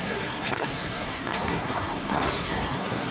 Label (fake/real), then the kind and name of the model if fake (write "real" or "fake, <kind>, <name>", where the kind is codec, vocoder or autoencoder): fake, codec, SNAC